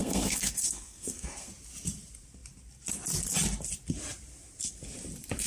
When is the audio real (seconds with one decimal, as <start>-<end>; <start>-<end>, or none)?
1.5-5.5